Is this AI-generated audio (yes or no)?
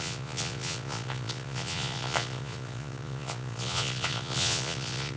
yes